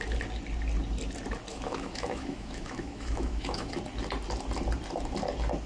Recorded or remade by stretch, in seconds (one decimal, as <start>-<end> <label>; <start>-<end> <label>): 0.0-1.5 recorded; 1.5-3.7 remade; 3.7-5.7 recorded